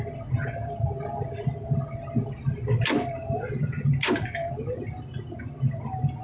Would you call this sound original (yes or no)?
yes